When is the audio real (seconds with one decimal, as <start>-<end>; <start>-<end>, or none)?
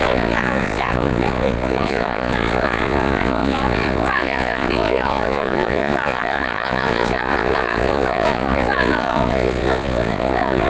none